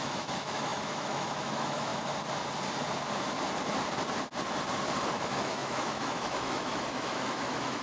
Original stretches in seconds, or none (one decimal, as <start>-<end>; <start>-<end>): 1.9-5.1